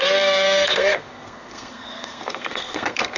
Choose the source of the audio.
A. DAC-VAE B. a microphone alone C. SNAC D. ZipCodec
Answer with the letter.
C